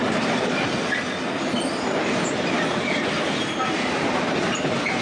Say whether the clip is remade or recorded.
recorded